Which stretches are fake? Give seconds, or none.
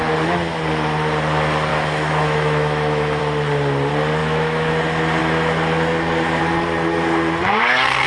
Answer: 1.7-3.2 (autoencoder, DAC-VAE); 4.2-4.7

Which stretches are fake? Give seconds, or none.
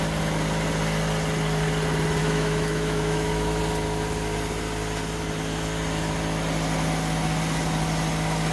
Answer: 2.2-3.6 (autoencoder, DAC-VAE)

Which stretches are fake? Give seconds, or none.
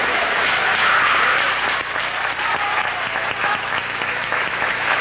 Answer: 0.0-0.7 (autoencoder, DAC-VAE); 3.4-5.0